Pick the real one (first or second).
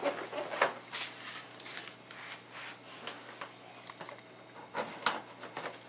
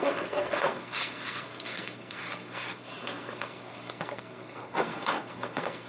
first